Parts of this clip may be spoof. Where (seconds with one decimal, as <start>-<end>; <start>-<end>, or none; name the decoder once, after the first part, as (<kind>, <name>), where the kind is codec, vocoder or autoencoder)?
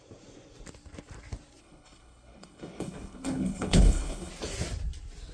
1.6-4.3 (codec, HILCodec)